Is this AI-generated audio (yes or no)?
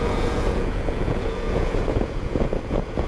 yes